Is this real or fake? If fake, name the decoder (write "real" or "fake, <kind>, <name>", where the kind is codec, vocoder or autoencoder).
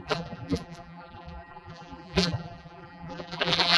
fake, vocoder, BigVGAN v2